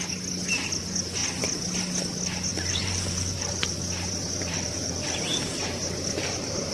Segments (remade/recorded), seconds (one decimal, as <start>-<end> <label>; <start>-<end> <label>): 0.0-2.5 recorded; 2.5-6.7 remade